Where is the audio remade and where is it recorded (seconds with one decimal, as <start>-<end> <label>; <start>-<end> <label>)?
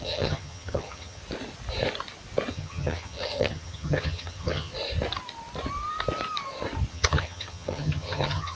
0.0-1.2 remade; 1.2-2.5 recorded; 2.5-4.7 remade; 4.7-6.9 recorded; 6.9-8.5 remade